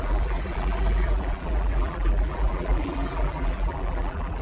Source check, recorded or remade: remade